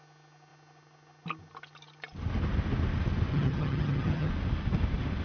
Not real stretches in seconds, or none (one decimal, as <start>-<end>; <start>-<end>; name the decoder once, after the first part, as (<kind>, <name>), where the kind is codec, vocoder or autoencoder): 3.3-4.3 (vocoder, HiFi-GAN)